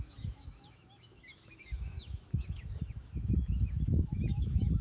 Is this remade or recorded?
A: remade